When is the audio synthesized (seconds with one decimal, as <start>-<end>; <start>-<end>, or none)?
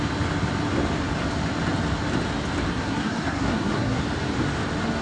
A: 2.7-4.0